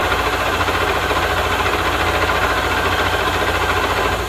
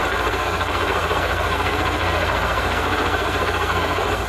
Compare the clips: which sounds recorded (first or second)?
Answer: first